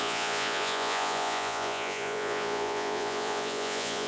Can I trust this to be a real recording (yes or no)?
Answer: no